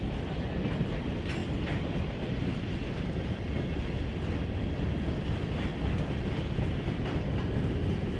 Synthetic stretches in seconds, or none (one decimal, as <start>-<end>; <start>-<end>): none